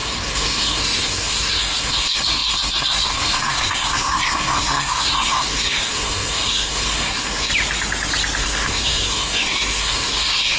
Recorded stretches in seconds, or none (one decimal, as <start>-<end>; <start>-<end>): 7.5-8.4